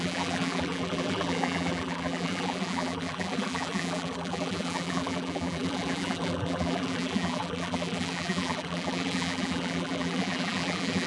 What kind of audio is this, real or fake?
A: fake